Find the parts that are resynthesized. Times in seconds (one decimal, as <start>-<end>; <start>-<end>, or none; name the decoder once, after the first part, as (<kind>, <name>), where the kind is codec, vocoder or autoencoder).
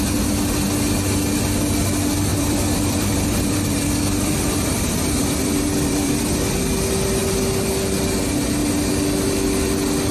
2.3-6.6 (vocoder, BigVGAN v2)